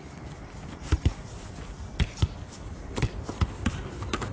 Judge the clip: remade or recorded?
recorded